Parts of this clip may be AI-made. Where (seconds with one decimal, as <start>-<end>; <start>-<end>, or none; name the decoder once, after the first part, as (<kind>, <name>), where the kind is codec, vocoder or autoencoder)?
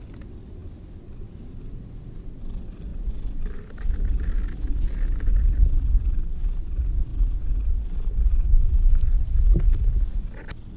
none